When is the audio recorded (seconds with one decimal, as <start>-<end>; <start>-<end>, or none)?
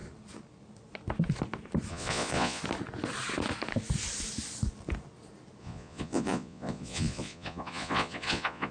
0.0-1.9; 2.6-5.6